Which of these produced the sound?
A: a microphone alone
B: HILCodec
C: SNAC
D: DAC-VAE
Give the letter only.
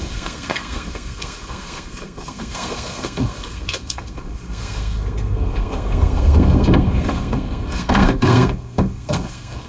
C